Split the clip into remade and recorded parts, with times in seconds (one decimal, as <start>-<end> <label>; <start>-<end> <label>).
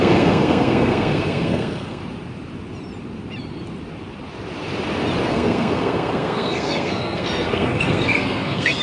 0.0-2.0 remade; 2.0-5.3 recorded; 5.3-8.8 remade